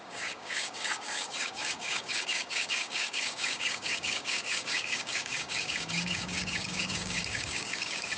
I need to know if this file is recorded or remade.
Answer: remade